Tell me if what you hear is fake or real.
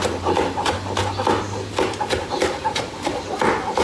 real